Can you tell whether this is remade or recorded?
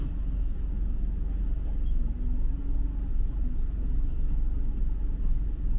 recorded